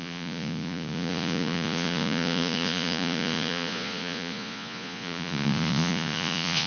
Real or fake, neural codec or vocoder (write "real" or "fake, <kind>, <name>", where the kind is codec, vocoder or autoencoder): fake, vocoder, Vocos